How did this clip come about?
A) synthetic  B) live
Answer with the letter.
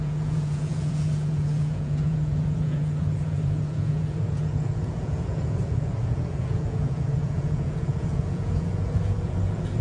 A